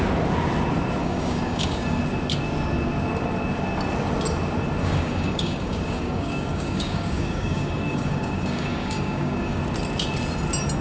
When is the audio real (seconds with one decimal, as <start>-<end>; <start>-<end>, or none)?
0.0-1.0; 2.0-4.8; 9.6-10.8

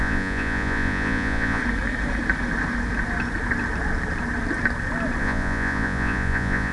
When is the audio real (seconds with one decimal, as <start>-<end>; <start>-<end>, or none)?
1.6-5.2